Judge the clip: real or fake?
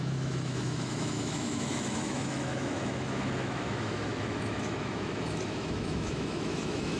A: fake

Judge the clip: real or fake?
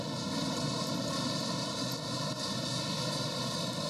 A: real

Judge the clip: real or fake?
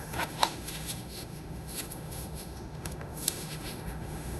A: fake